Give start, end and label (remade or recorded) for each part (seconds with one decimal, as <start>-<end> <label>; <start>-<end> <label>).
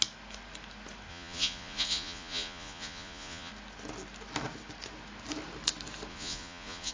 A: 0.0-1.1 recorded; 1.1-3.5 remade; 3.5-6.1 recorded; 6.1-6.9 remade